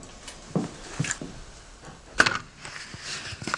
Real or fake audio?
real